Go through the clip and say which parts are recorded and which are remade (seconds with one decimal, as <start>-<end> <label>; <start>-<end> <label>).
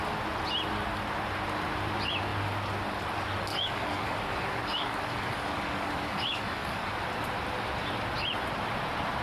0.0-3.5 recorded; 3.5-6.9 remade; 6.9-9.2 recorded